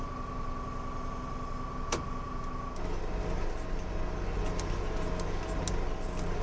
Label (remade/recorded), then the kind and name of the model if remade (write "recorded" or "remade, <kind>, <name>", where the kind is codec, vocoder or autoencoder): recorded